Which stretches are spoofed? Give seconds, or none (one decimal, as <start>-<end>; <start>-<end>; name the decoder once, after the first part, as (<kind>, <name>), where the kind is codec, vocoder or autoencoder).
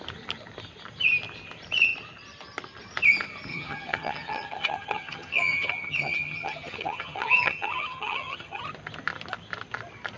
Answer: 3.5-8.6 (vocoder, HiFi-GAN)